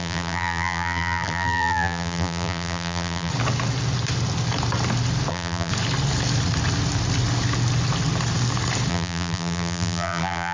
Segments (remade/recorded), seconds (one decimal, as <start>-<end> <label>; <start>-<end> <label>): 0.0-3.3 remade; 3.3-5.3 recorded; 5.3-5.7 remade; 5.7-8.9 recorded; 8.9-10.5 remade